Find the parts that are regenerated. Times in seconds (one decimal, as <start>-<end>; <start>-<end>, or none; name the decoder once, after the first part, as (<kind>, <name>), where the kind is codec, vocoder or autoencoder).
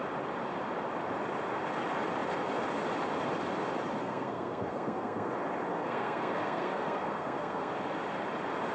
4.0-5.3 (codec, SNAC); 5.7-7.7